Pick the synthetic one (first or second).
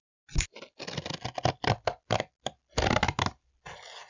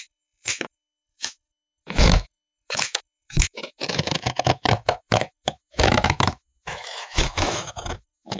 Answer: second